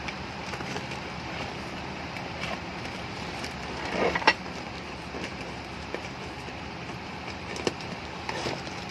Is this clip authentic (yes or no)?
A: no